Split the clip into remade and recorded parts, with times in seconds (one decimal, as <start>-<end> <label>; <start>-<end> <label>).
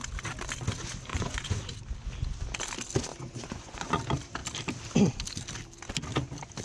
0.0-1.1 recorded; 1.1-1.7 remade; 1.7-3.1 recorded; 3.1-4.0 remade; 4.0-6.6 recorded